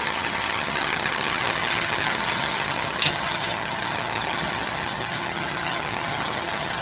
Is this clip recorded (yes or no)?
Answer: no